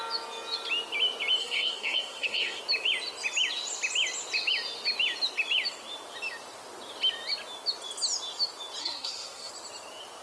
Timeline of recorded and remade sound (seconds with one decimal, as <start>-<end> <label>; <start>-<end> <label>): 0.0-1.4 recorded; 1.4-2.6 remade; 2.6-8.8 recorded; 8.8-9.5 remade; 9.5-10.2 recorded